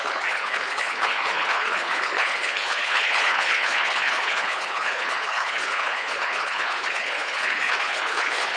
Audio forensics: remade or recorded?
remade